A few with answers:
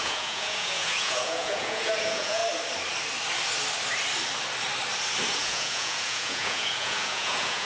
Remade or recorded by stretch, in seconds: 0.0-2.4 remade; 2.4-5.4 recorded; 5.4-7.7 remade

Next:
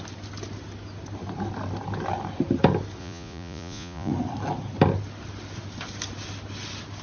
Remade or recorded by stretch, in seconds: 0.0-3.0 recorded; 3.0-4.1 remade; 4.1-7.0 recorded

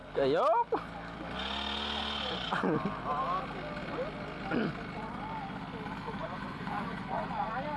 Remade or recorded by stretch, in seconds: 0.0-6.2 recorded; 6.2-7.3 remade; 7.3-7.8 recorded

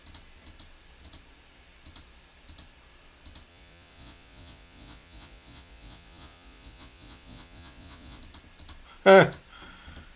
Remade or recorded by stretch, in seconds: 0.0-3.5 recorded; 3.5-8.2 remade; 8.2-10.2 recorded